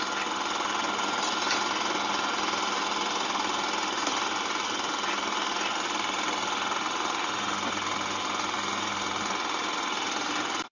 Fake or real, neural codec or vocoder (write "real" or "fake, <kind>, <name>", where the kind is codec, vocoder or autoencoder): real